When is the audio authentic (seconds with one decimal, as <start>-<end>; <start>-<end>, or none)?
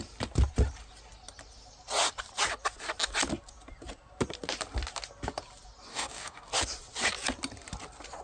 0.0-5.9; 6.5-8.2